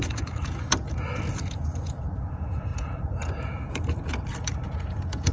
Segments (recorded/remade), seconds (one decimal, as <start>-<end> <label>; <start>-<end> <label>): 0.0-5.3 remade